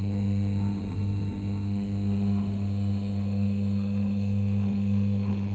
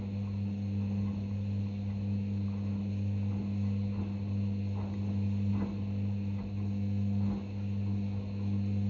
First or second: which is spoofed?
first